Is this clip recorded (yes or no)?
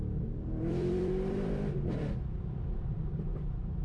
no